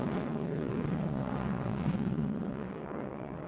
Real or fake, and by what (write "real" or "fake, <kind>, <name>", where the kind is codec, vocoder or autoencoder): fake, vocoder, WaveNeXt